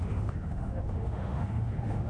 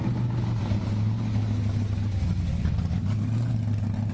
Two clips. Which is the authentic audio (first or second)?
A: second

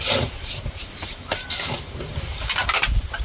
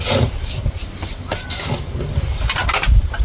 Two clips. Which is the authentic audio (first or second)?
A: second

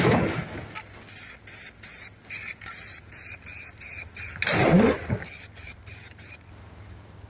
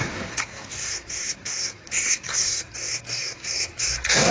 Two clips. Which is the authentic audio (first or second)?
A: first